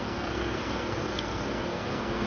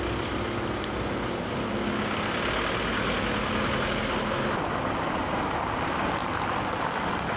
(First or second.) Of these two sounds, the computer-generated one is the first